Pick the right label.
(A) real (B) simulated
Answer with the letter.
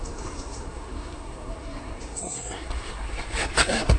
B